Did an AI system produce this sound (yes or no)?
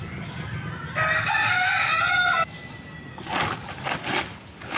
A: no